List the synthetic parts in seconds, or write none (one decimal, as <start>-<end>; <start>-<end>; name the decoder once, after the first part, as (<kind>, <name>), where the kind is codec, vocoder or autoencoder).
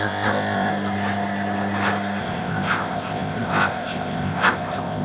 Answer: 0.0-0.7 (codec, ZipCodec); 2.2-5.0